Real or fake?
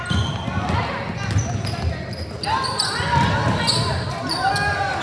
real